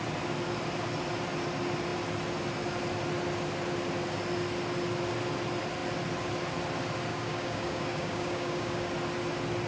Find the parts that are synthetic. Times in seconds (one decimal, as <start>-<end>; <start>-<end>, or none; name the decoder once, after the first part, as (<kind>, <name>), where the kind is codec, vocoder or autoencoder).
7.1-8.9 (codec, DAC)